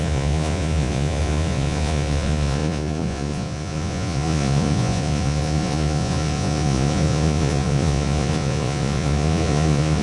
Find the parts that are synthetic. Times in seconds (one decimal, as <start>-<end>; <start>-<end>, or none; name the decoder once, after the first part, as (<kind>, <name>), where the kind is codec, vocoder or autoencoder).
0.0-10.0 (vocoder, Vocos)